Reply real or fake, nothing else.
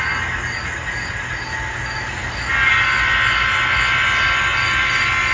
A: real